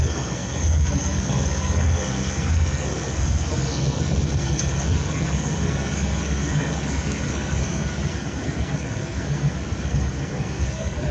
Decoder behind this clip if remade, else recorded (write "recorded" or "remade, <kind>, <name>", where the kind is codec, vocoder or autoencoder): remade, codec, SNAC